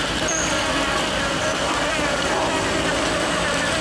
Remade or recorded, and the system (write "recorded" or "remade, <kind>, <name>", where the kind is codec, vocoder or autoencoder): recorded